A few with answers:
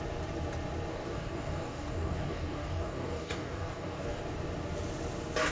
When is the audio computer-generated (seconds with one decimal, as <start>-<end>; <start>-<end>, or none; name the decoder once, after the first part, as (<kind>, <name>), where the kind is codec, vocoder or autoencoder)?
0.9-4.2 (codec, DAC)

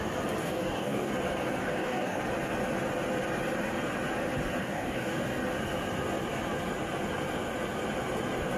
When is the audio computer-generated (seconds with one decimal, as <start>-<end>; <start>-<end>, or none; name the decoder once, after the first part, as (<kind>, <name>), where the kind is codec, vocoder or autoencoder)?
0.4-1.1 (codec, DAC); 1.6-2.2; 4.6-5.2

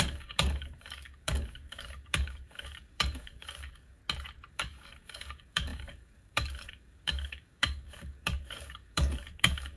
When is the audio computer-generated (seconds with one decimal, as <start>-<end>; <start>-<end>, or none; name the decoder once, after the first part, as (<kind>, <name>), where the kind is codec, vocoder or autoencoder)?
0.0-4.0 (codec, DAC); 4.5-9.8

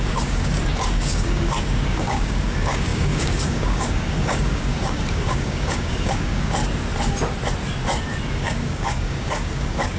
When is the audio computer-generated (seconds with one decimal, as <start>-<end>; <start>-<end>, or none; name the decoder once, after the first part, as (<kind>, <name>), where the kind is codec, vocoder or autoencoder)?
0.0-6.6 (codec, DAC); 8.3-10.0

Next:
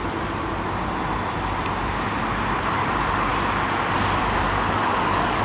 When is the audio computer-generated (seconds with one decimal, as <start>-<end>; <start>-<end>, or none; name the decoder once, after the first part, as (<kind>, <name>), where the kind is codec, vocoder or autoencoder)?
2.7-3.3 (codec, DAC); 4.2-5.4